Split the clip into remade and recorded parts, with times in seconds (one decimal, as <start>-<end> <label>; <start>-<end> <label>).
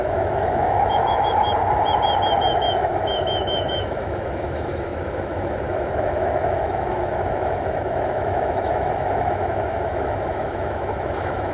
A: 0.0-1.5 remade; 1.5-2.3 recorded; 2.3-11.5 remade